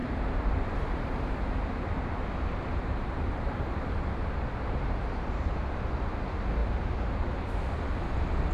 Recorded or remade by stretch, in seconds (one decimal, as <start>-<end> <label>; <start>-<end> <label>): 0.0-1.5 remade; 1.5-2.5 recorded; 2.5-5.4 remade; 5.4-8.5 recorded